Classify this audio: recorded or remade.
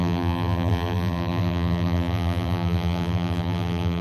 remade